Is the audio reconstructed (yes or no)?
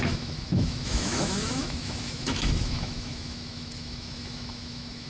yes